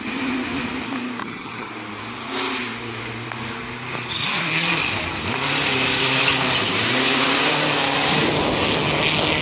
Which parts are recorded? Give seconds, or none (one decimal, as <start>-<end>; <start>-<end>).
0.0-1.2; 1.7-9.4

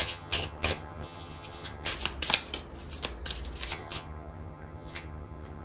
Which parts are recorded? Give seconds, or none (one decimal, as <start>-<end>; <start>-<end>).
1.9-3.7

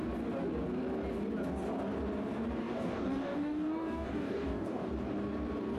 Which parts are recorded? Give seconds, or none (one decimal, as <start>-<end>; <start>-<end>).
0.0-2.6; 4.9-5.8

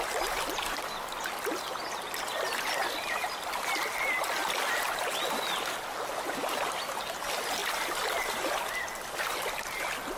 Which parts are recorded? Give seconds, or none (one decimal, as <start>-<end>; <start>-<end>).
0.0-10.2